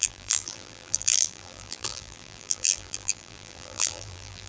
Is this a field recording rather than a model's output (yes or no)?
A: no